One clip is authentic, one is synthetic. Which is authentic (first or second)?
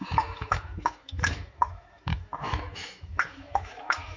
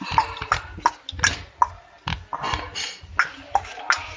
second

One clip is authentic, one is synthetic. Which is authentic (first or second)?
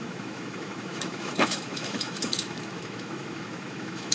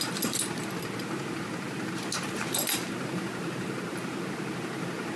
second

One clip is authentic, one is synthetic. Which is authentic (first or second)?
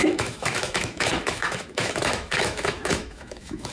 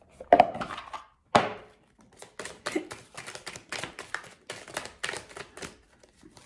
second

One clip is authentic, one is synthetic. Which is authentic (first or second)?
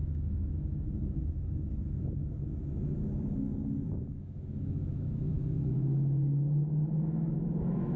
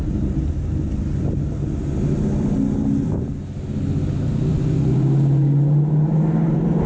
second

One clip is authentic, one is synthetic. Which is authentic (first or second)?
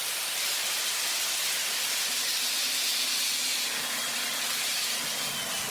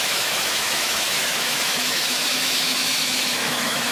first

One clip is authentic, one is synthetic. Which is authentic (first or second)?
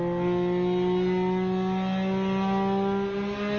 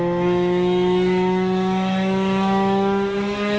first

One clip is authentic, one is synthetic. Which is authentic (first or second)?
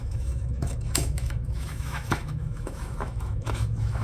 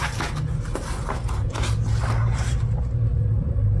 second